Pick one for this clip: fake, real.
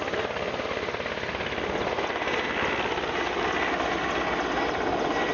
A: real